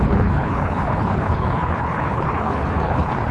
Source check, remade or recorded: remade